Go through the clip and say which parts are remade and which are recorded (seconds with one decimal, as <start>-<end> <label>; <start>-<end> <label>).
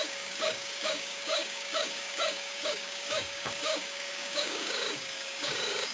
0.0-5.9 remade